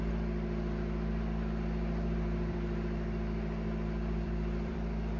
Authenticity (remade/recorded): remade